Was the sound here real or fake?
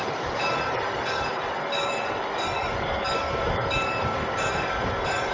fake